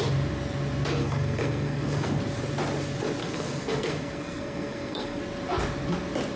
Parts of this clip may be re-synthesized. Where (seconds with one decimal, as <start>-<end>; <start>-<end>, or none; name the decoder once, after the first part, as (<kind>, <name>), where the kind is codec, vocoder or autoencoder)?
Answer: 1.0-2.2 (codec, SNAC); 3.2-5.2